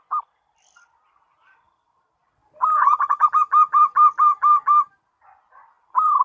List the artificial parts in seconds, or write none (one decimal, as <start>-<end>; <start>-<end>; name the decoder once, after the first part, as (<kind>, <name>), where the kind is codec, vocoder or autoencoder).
2.2-4.6 (vocoder, BigVGAN v2)